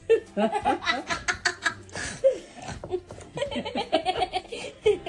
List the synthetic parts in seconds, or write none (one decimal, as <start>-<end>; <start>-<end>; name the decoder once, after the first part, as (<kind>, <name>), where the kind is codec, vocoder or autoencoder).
1.5-4.4 (vocoder, BigVGAN v2)